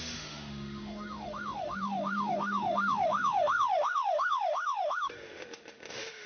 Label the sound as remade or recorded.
remade